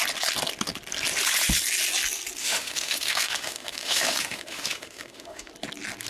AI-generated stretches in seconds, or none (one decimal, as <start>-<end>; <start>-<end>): 2.4-5.5